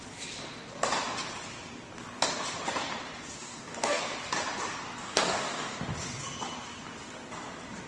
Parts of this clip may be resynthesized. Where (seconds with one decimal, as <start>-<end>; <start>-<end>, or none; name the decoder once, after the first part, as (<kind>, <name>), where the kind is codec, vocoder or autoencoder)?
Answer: 3.4-4.0 (codec, DAC); 5.0-5.8